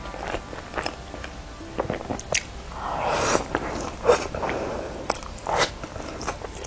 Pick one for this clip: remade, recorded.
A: recorded